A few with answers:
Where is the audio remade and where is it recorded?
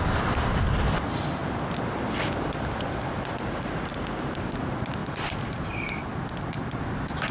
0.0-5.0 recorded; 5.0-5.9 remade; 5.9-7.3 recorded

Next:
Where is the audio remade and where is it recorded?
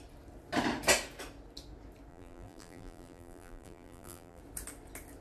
0.0-2.1 recorded; 2.1-4.4 remade; 4.4-5.2 recorded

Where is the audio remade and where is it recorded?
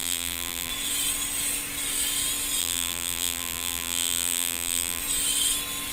0.0-0.7 remade; 0.7-2.6 recorded; 2.6-5.0 remade; 5.0-5.9 recorded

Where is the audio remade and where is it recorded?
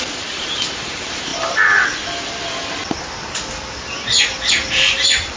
0.0-1.3 remade; 1.3-4.5 recorded; 4.5-5.4 remade